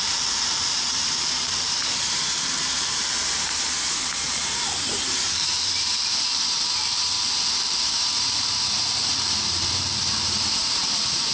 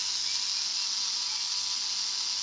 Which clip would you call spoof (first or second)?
first